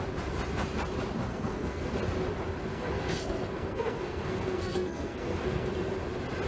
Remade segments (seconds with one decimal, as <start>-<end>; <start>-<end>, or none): 1.3-1.9; 2.7-5.7